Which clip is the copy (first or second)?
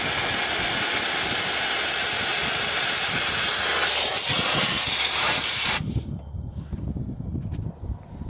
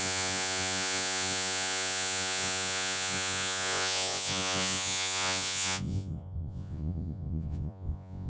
second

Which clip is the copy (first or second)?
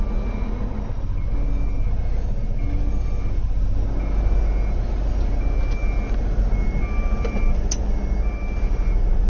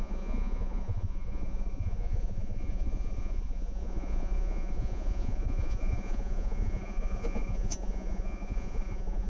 second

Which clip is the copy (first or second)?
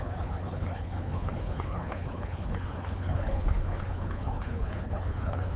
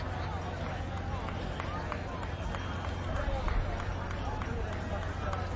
first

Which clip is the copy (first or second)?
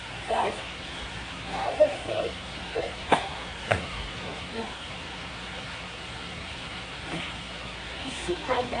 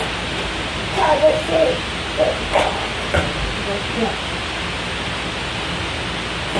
first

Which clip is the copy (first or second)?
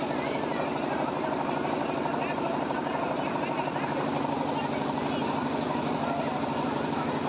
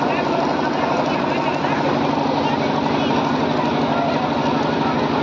first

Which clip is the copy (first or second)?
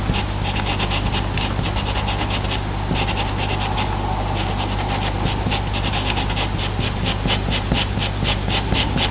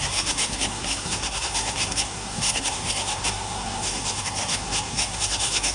second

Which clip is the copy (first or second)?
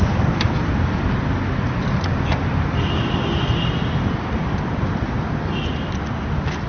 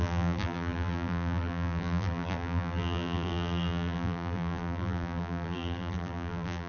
second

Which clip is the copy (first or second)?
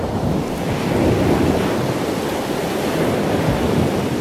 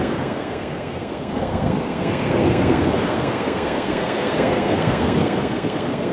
second